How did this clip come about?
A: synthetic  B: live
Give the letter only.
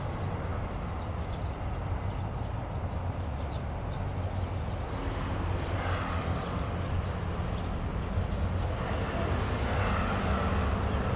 B